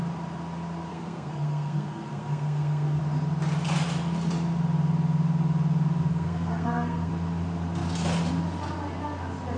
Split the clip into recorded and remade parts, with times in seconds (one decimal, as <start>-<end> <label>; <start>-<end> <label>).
0.0-0.9 recorded; 0.9-3.0 remade; 3.0-6.1 recorded; 6.1-7.1 remade; 7.1-9.6 recorded